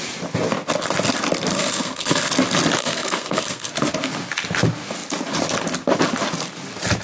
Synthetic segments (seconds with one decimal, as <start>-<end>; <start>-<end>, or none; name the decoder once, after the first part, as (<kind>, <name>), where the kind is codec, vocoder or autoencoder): 1.5-2.3 (codec, SNAC); 2.8-3.7